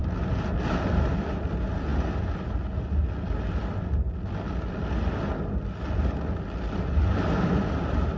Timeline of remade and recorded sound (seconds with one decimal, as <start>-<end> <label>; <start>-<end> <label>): 0.0-8.2 recorded